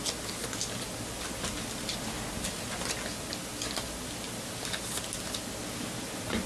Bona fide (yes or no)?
yes